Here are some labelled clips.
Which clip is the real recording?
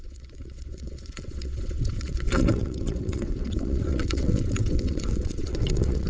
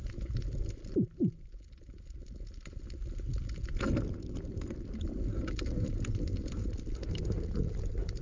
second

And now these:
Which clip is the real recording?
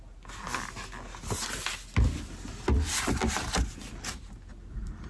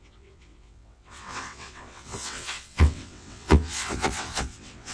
first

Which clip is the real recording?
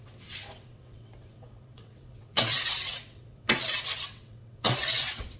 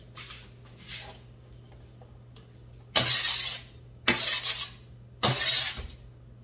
second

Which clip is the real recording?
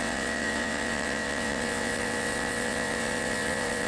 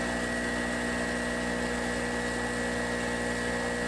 second